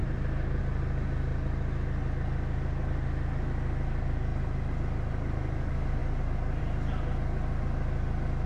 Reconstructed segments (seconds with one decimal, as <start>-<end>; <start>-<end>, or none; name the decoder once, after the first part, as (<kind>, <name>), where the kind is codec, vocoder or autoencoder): 0.0-0.6 (vocoder, BigVGAN v2); 1.3-2.9; 6.0-6.6

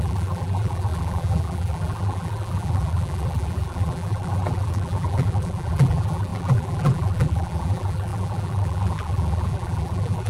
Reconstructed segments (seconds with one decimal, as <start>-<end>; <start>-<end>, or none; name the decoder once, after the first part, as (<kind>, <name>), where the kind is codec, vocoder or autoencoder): 0.0-10.3 (vocoder, BigVGAN v2)

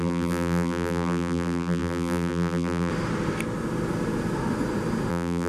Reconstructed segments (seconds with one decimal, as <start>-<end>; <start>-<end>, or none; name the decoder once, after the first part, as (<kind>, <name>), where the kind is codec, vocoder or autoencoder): 0.0-2.9 (vocoder, BigVGAN v2); 5.1-5.5

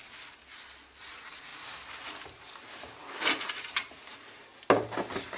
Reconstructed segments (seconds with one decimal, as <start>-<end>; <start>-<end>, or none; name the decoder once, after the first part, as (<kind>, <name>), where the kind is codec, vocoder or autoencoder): 1.0-1.5 (vocoder, BigVGAN v2); 3.7-4.5

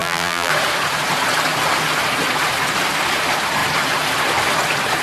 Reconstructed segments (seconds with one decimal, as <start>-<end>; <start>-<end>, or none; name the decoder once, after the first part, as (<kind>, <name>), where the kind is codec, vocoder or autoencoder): 0.0-0.5 (vocoder, BigVGAN v2)

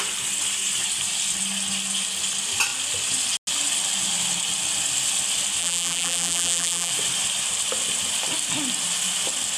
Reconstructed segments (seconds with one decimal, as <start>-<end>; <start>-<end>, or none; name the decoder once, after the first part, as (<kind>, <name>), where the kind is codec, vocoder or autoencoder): 5.6-6.9 (vocoder, BigVGAN v2)

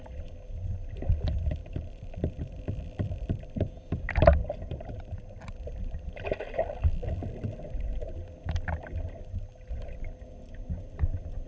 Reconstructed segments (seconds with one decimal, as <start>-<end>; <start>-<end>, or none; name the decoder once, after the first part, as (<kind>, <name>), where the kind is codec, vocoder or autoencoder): 1.6-2.3 (vocoder, BigVGAN v2); 4.4-5.5